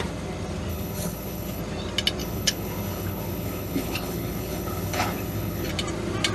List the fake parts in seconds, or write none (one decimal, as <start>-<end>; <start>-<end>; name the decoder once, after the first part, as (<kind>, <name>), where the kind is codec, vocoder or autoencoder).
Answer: 0.7-1.6 (codec, HILCodec); 2.2-5.7